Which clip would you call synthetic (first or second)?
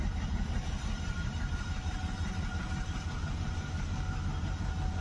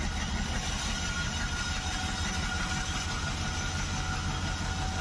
first